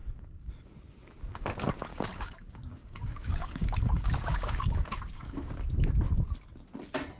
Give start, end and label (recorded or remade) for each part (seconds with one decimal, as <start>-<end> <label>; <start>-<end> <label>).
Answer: 0.0-0.5 remade; 0.5-1.9 recorded; 1.9-5.5 remade; 5.5-7.2 recorded